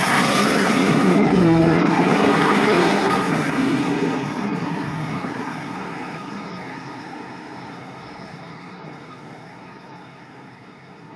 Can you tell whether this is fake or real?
fake